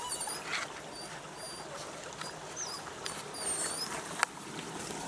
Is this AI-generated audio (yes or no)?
no